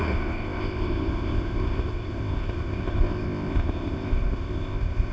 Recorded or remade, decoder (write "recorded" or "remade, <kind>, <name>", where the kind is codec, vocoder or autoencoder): remade, codec, ZipCodec